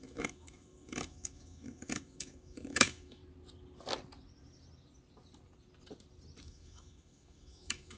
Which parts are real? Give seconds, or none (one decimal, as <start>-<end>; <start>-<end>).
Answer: 3.2-6.4